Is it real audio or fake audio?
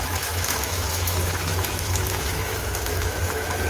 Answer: fake